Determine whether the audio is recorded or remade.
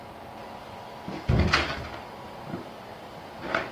recorded